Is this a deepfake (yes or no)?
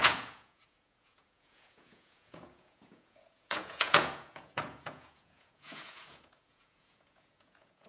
yes